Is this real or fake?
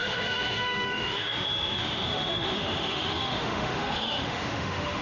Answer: fake